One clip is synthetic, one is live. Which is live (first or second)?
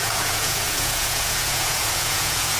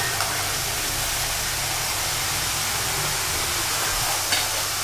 second